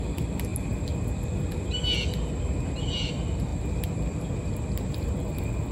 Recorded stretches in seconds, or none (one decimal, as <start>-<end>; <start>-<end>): 0.0-5.7